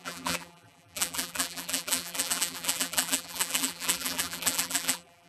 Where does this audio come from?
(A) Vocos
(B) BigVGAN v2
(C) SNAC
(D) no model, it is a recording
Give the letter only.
B